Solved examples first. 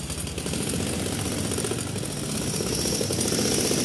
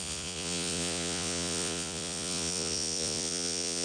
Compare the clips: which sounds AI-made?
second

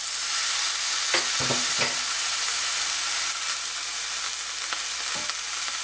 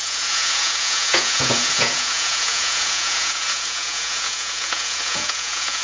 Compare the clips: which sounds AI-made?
second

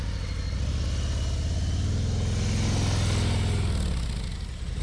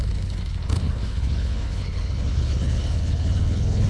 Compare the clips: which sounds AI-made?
second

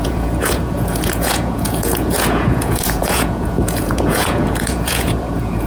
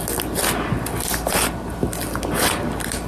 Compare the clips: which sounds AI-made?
first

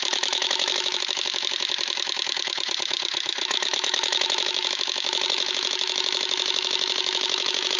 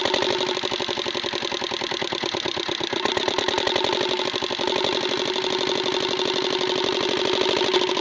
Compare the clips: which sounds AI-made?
first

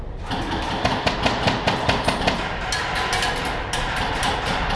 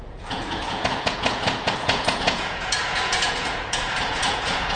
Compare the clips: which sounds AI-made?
second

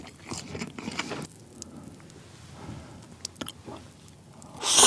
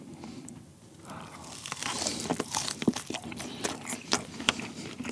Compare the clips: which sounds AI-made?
second